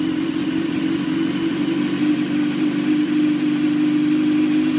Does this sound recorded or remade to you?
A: recorded